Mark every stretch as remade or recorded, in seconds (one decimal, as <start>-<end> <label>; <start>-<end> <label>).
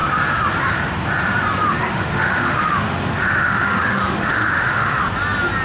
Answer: 0.0-1.6 recorded; 1.6-5.0 remade; 5.0-5.6 recorded